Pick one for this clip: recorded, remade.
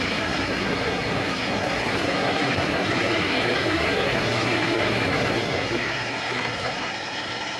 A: remade